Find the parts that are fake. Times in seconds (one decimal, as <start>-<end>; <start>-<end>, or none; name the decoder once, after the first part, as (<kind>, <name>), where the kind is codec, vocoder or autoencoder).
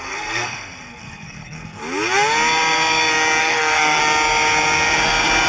0.0-1.8 (codec, SNAC); 3.4-4.0